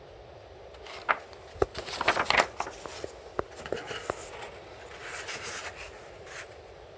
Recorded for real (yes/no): yes